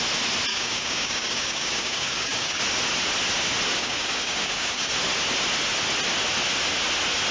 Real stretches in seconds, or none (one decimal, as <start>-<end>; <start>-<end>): 0.0-0.5; 2.6-3.8; 4.9-7.3